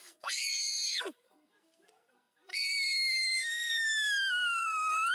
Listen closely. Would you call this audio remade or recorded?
remade